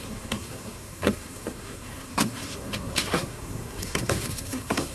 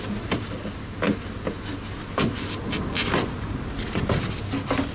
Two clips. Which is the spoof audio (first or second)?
first